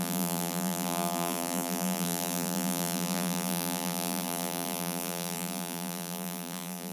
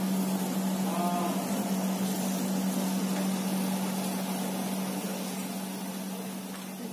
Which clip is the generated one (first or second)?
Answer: first